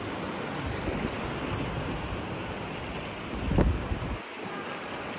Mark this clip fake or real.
real